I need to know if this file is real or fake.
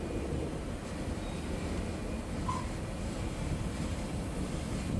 fake